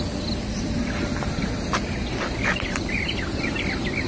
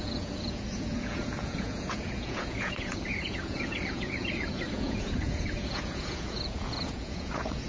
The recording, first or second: first